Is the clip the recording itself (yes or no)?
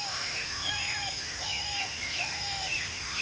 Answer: no